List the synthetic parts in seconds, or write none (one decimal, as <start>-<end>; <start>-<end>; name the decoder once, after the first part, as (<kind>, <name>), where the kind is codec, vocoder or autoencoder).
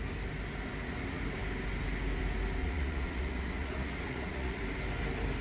2.6-4.6 (vocoder, Vocos)